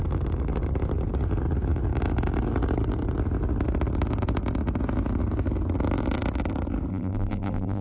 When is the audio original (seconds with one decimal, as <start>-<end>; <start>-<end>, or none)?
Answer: 0.0-6.9